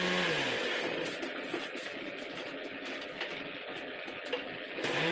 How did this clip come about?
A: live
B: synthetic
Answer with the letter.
A